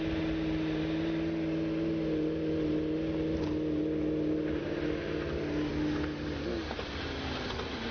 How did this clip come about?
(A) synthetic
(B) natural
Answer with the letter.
B